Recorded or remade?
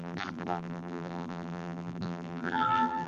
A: remade